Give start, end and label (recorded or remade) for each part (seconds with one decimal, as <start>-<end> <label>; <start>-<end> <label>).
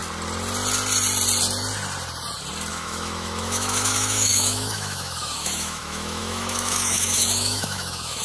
0.0-2.7 recorded; 2.7-8.2 remade